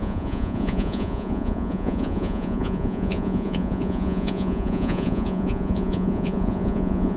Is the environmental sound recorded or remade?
remade